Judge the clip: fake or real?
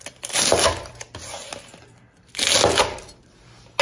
real